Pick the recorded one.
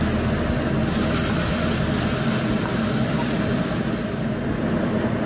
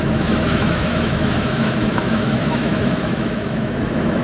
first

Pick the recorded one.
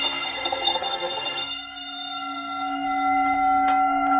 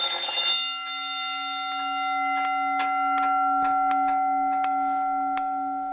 second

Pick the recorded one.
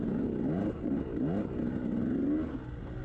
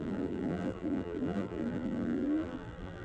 first